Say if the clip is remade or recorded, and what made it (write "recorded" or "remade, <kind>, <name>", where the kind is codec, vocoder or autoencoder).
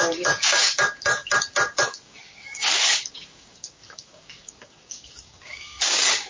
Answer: remade, codec, DAC